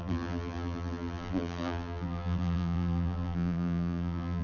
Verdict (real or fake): fake